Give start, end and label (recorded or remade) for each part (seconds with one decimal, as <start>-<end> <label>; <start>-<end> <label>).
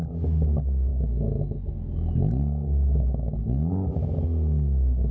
0.0-5.1 recorded